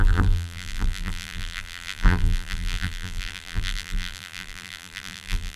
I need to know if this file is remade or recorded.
remade